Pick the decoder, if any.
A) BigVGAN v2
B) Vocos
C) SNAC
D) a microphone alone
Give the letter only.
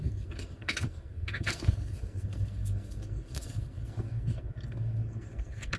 C